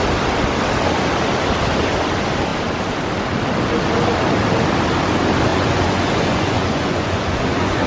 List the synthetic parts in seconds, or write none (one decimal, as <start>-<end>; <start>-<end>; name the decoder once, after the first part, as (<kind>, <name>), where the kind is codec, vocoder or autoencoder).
5.5-7.9 (vocoder, Vocos)